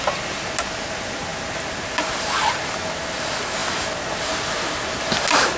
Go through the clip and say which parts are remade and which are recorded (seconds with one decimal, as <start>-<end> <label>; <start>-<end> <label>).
0.0-5.6 recorded